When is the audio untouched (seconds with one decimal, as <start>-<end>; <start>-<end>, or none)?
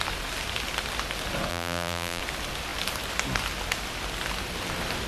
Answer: 0.0-1.5; 2.2-5.1